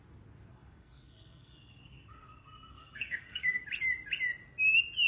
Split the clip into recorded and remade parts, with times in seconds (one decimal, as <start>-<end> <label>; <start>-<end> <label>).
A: 0.0-0.5 recorded; 0.5-3.6 remade; 3.6-5.1 recorded